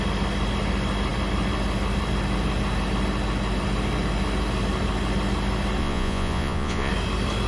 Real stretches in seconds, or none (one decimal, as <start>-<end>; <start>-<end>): 0.0-5.8; 6.9-7.5

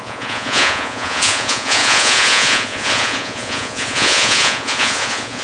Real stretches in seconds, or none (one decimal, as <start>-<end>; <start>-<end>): none

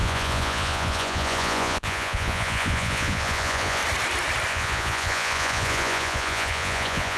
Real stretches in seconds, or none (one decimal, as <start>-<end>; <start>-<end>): 3.8-4.5

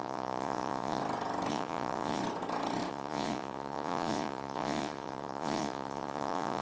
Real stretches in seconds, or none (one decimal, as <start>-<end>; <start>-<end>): 1.0-1.5; 2.2-2.9

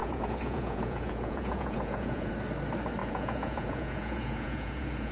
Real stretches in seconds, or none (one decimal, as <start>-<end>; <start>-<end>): 2.3-3.0

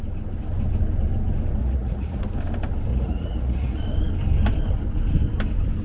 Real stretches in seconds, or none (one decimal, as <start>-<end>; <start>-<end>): 0.0-1.6; 2.2-2.9; 3.8-5.8

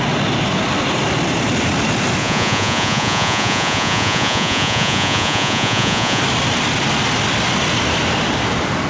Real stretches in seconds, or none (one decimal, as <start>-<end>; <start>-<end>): 0.0-2.2; 6.2-8.9

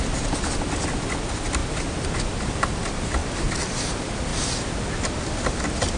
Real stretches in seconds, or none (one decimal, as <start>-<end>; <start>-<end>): 0.0-6.0